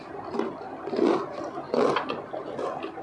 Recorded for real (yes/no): yes